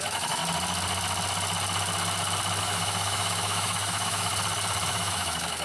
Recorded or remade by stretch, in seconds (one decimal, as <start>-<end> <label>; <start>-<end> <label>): 0.0-0.4 remade; 0.4-2.6 recorded; 2.6-4.3 remade; 4.3-4.9 recorded; 4.9-5.6 remade